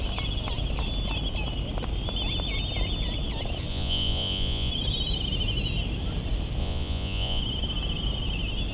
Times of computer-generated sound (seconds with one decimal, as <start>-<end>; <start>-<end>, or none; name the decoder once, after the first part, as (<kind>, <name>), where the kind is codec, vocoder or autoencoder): 3.7-4.7 (vocoder, Vocos); 6.6-7.4